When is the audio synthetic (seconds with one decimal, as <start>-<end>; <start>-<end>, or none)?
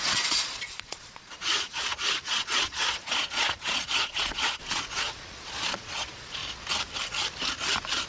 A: 0.0-6.4